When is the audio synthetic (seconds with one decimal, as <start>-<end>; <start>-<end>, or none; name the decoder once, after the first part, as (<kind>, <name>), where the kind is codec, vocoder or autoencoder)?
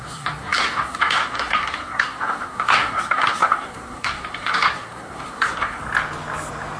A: 0.0-5.8 (codec, SNAC)